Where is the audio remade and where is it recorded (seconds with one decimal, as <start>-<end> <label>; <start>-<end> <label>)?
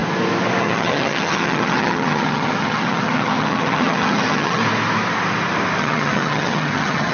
0.0-0.6 recorded; 0.6-4.6 remade; 4.6-5.8 recorded; 5.8-7.1 remade